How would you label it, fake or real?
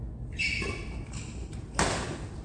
real